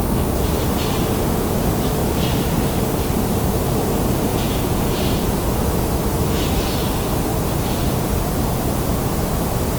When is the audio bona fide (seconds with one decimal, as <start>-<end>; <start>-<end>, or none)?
0.0-4.3; 5.3-8.5; 9.0-9.8